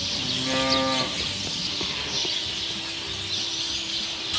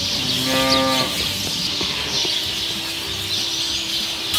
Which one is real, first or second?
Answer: second